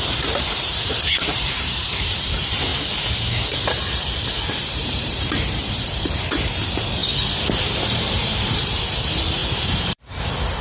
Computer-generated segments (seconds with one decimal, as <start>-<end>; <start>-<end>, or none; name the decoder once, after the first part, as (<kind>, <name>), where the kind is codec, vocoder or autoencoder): 0.0-2.7 (vocoder, BigVGAN v2); 4.7-7.0; 7.6-10.6